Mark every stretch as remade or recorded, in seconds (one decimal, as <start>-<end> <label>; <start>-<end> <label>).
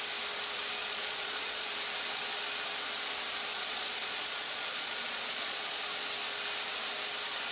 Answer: 0.0-0.8 recorded; 0.8-1.7 remade; 1.7-3.5 recorded; 3.5-5.7 remade; 5.7-7.5 recorded